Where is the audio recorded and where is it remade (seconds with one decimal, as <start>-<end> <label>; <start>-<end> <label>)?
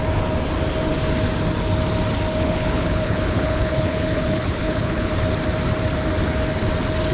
0.0-2.3 recorded; 2.3-5.1 remade; 5.1-7.1 recorded